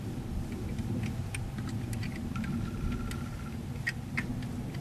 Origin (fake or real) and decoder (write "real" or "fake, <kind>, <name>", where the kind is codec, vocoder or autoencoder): real